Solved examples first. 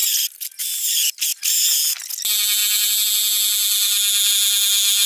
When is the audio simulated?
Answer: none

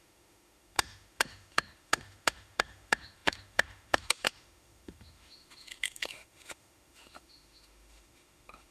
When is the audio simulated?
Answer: 0.0-8.7 (autoencoder, DAC-VAE)

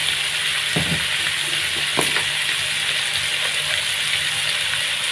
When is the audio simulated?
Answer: none